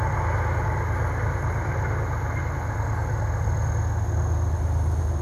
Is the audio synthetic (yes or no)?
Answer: no